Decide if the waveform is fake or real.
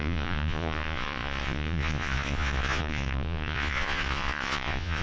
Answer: fake